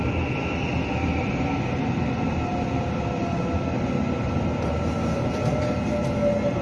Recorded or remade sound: recorded